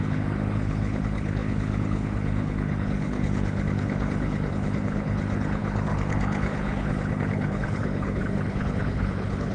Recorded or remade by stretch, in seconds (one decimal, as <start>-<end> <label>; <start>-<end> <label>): 0.0-9.5 remade